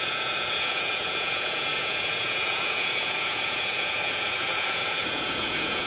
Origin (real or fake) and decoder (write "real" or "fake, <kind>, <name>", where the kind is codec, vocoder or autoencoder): fake, vocoder, Vocos